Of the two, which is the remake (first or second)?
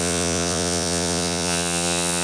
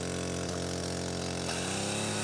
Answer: first